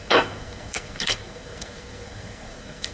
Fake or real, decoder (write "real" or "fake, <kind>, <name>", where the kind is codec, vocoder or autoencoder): fake, codec, SNAC